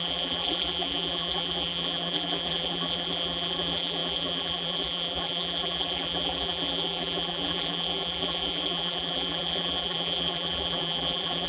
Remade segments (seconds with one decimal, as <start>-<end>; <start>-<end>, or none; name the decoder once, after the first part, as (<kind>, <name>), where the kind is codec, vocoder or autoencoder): 0.0-11.5 (vocoder, BigVGAN v2)